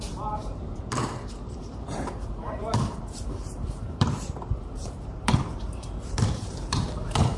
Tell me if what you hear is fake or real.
fake